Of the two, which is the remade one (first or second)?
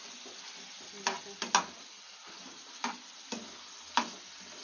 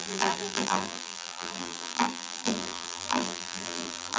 second